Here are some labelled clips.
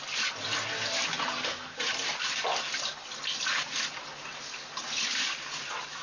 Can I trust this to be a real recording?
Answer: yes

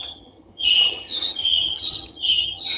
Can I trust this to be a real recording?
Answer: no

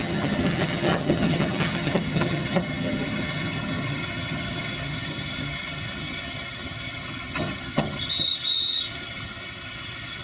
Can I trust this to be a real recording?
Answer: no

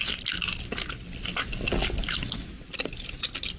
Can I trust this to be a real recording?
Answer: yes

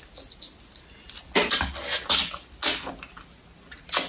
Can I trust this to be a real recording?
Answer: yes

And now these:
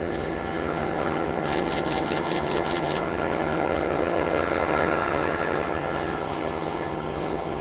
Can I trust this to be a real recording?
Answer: no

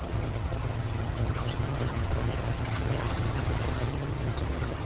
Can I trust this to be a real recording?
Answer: no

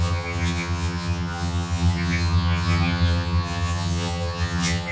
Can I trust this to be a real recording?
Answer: no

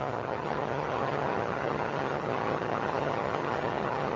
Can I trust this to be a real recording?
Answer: no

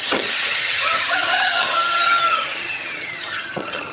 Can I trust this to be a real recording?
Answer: no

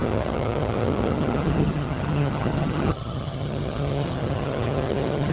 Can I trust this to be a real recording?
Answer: no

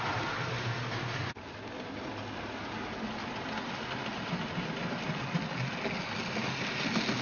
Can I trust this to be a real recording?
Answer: yes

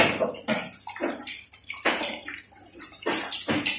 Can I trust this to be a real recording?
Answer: yes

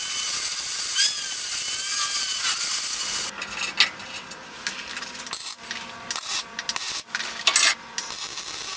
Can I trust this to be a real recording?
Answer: yes